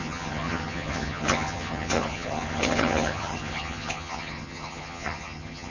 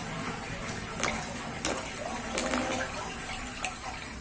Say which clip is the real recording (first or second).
second